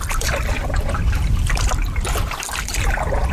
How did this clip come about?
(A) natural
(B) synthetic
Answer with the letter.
A